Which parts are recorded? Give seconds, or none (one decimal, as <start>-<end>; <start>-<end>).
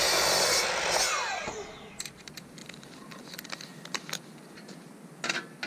0.0-5.7